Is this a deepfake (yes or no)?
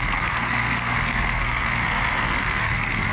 yes